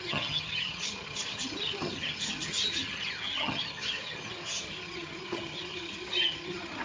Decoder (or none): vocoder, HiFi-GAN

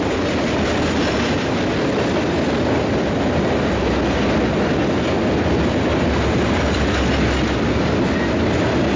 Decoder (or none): none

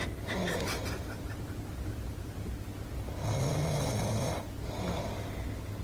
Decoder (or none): none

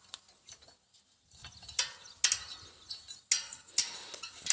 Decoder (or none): none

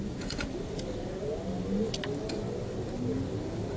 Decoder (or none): none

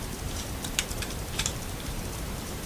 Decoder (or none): vocoder, BigVGAN v2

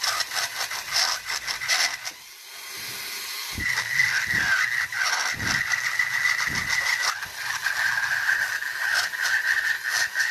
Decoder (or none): none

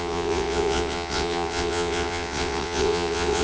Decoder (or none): vocoder, WaveNeXt